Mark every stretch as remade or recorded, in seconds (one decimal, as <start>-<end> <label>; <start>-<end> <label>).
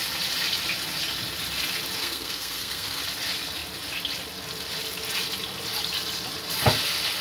0.0-2.0 recorded; 2.0-3.0 remade; 3.0-7.2 recorded